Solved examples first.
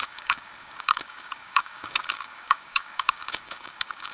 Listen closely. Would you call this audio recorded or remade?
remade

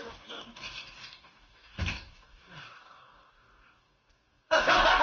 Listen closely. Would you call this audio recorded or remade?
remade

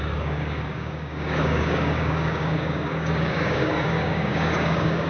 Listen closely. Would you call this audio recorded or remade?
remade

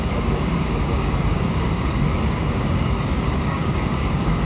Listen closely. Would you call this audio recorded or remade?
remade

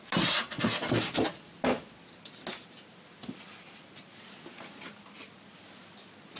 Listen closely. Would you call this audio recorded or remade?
recorded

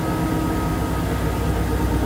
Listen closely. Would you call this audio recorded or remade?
recorded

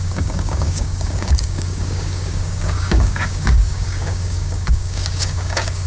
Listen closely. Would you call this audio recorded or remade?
remade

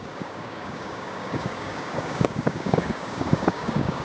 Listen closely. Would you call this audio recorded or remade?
remade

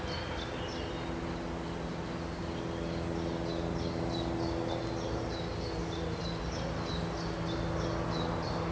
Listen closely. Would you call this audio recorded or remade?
recorded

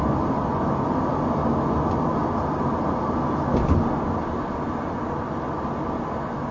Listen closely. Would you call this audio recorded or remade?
recorded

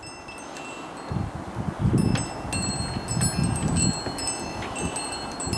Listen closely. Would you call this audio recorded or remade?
recorded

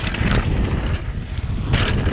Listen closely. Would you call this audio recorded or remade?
recorded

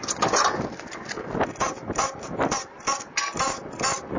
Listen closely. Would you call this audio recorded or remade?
recorded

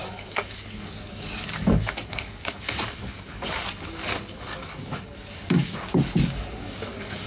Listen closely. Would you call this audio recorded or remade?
remade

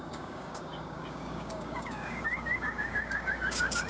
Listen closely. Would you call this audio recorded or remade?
remade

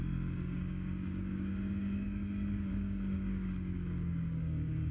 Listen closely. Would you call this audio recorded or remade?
remade